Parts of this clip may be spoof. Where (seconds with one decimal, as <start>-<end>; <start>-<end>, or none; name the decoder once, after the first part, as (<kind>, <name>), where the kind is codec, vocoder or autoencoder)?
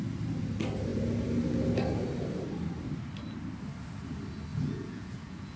4.5-5.6 (vocoder, Vocos)